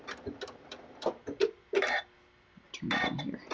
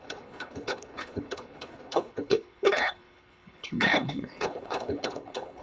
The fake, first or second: second